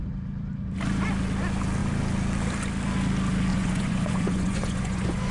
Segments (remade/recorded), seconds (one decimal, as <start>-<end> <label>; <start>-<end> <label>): 0.0-3.5 recorded; 3.5-5.3 remade